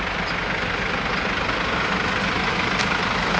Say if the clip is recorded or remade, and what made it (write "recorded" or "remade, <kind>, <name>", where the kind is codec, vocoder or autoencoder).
recorded